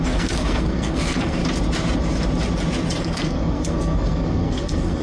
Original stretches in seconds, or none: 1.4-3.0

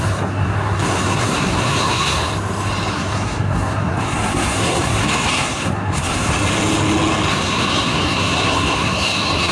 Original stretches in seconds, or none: 2.3-2.9; 6.3-7.3

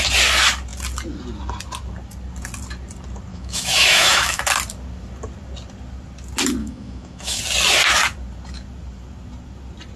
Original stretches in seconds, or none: 0.0-3.3; 4.4-6.6; 7.4-10.0

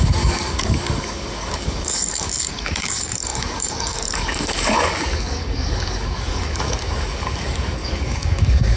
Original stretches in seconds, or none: none

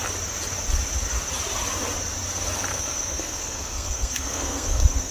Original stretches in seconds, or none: 0.0-2.7

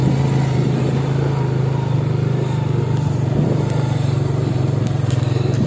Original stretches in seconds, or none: 0.0-3.4

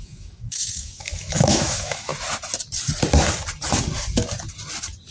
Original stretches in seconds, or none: 2.1-5.1